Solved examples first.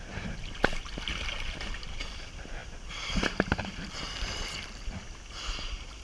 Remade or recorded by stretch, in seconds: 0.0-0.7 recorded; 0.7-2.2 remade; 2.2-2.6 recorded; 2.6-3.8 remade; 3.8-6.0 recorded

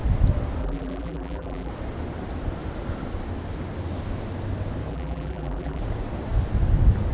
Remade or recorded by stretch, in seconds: 0.0-0.6 recorded; 0.6-1.7 remade; 1.7-4.9 recorded; 4.9-5.8 remade; 5.8-7.1 recorded

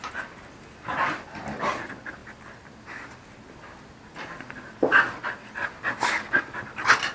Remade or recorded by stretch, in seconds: 0.0-7.1 recorded

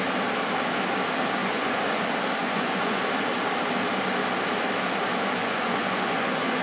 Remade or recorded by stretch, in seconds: 0.0-1.4 recorded; 1.4-2.0 remade; 2.0-2.4 recorded; 2.4-3.0 remade; 3.0-5.4 recorded; 5.4-6.6 remade